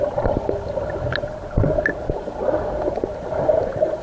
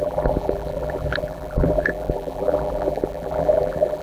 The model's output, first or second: second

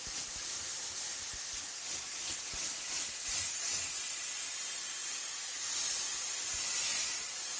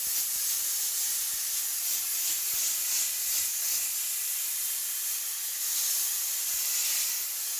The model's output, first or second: first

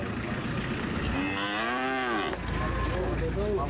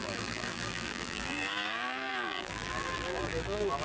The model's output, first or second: second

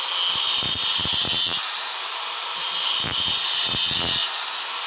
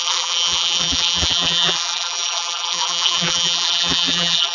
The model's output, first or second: second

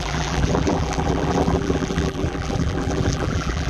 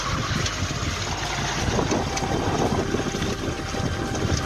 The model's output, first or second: first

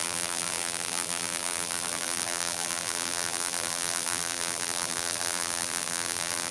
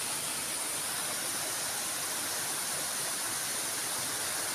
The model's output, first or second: first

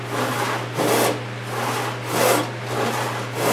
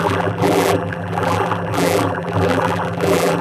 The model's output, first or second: second